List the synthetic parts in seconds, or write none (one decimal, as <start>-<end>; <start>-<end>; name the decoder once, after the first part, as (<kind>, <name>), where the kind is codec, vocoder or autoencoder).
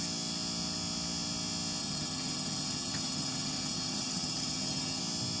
1.8-5.0 (vocoder, HiFi-GAN)